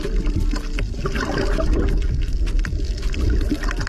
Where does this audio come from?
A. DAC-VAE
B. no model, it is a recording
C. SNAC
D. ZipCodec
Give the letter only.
B